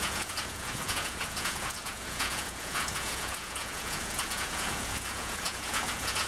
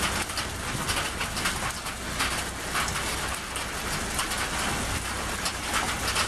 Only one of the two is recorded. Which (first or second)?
second